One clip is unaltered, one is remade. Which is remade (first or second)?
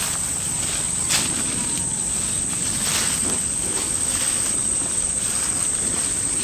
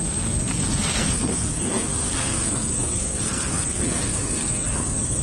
second